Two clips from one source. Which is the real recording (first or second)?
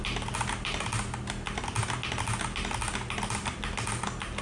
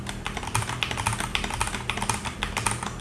first